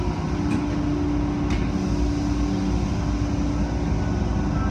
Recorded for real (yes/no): yes